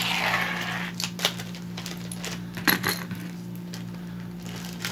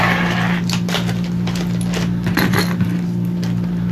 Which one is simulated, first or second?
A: second